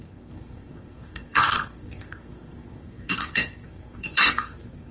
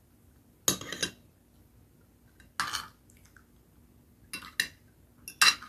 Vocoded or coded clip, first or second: first